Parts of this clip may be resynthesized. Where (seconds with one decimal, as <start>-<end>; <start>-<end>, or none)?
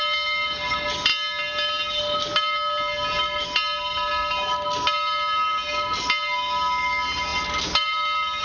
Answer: none